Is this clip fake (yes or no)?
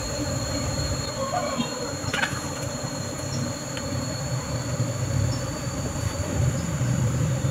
yes